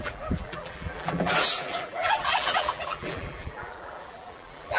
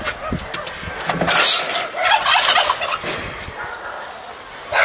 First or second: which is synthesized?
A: first